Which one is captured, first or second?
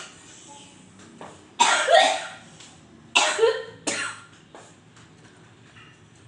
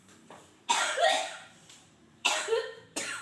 first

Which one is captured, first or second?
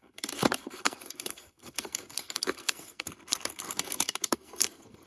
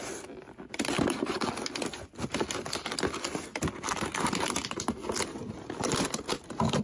second